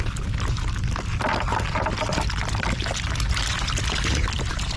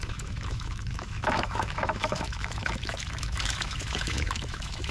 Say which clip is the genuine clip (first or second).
first